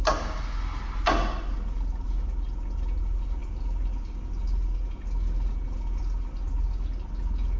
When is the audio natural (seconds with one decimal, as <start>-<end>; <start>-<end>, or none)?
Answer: 0.0-7.6